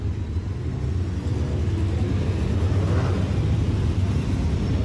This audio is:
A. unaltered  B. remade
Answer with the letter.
A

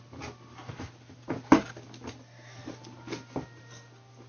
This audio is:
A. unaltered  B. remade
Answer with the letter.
A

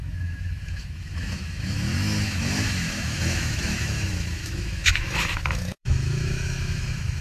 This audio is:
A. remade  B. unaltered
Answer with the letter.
A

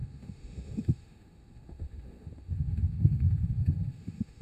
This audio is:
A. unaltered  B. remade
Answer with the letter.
B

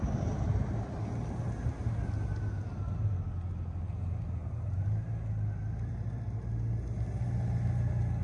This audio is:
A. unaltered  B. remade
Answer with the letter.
A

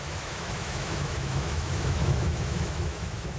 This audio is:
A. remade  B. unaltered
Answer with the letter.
A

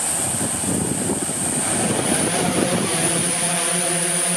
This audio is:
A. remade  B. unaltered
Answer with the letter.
B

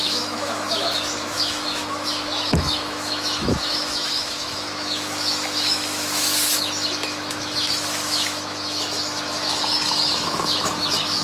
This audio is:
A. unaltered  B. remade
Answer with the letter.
B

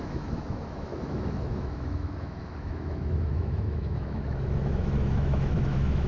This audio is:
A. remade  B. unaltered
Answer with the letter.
A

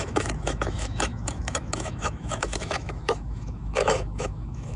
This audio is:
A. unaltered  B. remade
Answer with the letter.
B